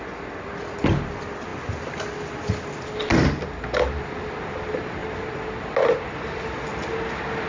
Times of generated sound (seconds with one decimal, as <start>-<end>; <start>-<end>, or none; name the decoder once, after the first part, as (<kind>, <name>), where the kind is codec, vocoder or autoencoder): none

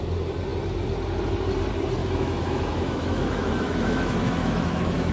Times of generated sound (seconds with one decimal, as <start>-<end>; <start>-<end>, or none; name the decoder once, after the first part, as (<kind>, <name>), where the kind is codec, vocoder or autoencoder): 2.0-5.1 (autoencoder, DAC-VAE)

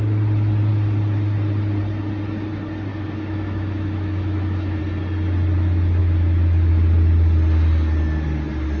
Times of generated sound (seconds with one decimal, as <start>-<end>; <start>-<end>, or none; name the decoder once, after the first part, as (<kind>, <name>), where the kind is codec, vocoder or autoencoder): 2.9-4.8 (autoencoder, DAC-VAE); 6.0-6.7

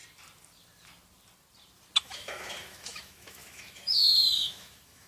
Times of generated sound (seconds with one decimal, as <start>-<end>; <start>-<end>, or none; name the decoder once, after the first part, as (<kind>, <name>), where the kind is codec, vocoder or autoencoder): 2.0-5.1 (autoencoder, DAC-VAE)

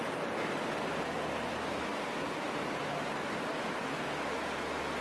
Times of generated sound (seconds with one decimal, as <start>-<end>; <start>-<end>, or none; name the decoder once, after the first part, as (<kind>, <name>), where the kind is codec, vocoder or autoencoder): none

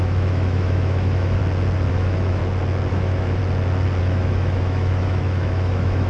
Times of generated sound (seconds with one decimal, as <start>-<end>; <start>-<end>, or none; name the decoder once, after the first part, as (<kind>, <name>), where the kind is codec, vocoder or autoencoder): 0.0-1.4 (autoencoder, DAC-VAE); 1.9-2.4; 2.9-3.4; 4.0-6.1

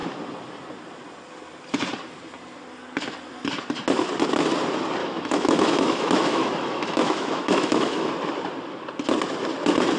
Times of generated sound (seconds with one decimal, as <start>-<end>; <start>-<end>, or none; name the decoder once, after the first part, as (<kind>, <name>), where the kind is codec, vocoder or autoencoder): 5.0-8.1 (autoencoder, DAC-VAE)

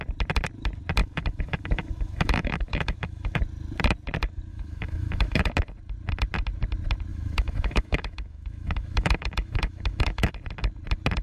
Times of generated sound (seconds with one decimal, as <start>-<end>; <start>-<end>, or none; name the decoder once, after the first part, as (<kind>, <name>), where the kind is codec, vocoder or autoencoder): 1.0-3.4 (autoencoder, DAC-VAE); 4.5-5.5; 7.1-10.3